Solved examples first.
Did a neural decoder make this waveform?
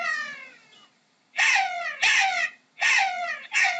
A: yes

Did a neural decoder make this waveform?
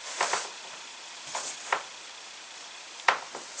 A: no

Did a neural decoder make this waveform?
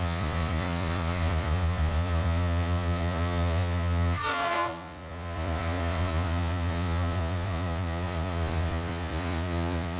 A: yes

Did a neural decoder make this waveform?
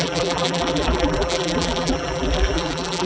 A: yes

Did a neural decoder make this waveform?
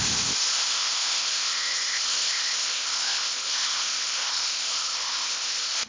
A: yes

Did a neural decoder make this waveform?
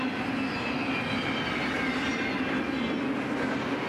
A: no